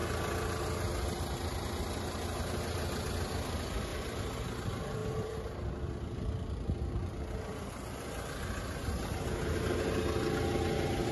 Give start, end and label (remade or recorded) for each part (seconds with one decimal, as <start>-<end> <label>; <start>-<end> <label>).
0.0-3.9 recorded; 3.9-4.4 remade; 4.4-11.1 recorded

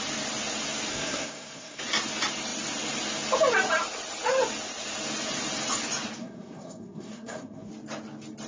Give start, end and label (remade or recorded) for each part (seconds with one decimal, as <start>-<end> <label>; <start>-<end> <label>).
0.0-0.9 recorded; 0.9-1.8 remade; 1.8-6.2 recorded; 6.2-7.7 remade; 7.7-8.5 recorded